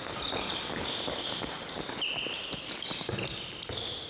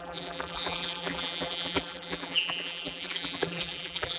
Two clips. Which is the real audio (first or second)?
first